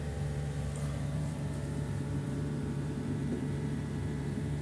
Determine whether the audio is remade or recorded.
remade